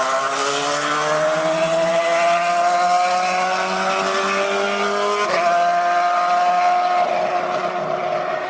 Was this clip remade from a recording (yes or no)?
no